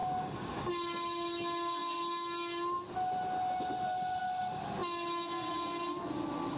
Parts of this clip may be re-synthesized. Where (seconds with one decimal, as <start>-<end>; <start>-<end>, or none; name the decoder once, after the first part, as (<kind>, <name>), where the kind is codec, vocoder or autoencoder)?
0.0-0.7 (codec, DAC)

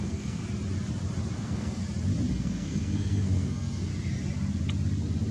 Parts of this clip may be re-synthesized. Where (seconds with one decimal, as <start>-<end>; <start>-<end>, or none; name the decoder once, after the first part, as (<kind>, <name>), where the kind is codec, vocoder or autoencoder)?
0.0-0.4 (codec, SNAC); 1.4-1.8; 2.3-3.9

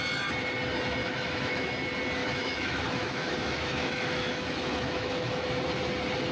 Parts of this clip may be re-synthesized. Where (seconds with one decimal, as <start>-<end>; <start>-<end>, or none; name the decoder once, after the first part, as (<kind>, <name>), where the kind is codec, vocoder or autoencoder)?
1.0-1.7 (autoencoder, DAC-VAE); 2.2-5.6

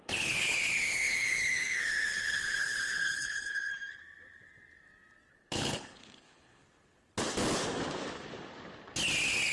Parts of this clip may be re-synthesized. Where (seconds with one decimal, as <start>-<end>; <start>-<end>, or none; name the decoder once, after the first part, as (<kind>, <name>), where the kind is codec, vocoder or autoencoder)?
0.0-3.7 (codec, HILCodec); 5.3-6.6

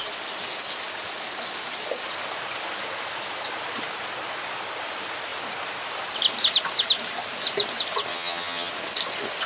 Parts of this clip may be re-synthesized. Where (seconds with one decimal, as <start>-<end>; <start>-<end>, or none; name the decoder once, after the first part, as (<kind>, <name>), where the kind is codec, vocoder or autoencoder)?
8.1-8.7 (vocoder, HiFi-GAN)

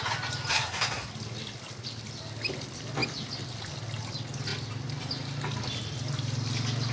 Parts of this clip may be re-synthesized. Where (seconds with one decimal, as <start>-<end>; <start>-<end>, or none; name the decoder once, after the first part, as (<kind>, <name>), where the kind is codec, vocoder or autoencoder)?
0.5-1.1 (codec, SNAC)

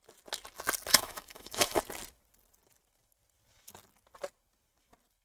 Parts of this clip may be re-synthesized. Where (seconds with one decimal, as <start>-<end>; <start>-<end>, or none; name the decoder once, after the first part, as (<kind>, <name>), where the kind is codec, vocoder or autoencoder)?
0.9-1.8 (autoencoder, DAC-VAE)

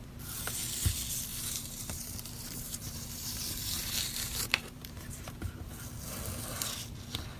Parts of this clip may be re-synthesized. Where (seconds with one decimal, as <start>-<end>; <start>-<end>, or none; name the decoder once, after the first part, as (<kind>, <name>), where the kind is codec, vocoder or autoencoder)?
1.3-5.7 (vocoder, BigVGAN v2)